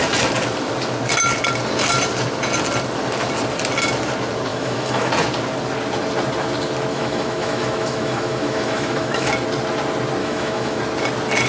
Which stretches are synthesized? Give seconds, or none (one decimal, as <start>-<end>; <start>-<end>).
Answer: 4.5-5.1; 6.9-9.3; 10.2-10.8